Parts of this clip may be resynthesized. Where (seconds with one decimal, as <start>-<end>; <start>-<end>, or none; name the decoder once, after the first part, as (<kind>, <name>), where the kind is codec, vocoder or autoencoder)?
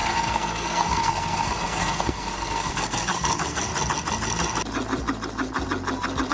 0.0-3.7 (codec, SNAC)